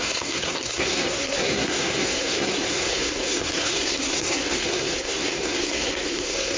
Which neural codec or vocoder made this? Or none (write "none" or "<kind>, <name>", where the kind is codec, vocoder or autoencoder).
codec, SNAC